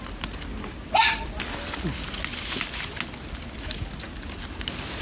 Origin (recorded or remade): recorded